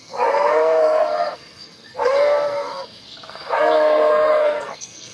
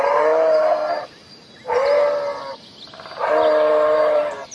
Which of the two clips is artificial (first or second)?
first